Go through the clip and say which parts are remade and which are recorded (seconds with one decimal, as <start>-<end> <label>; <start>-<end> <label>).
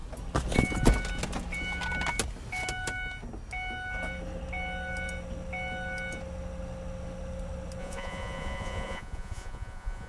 0.0-7.8 recorded; 7.8-10.1 remade